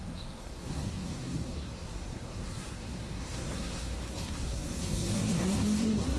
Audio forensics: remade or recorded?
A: remade